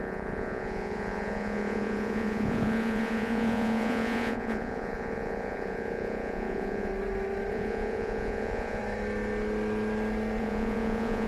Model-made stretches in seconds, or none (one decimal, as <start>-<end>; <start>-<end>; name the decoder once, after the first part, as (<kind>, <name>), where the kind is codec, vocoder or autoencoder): 0.0-6.9 (vocoder, Vocos); 7.5-8.8; 10.4-11.3